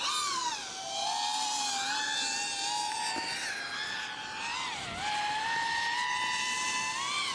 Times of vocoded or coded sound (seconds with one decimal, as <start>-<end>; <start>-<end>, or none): none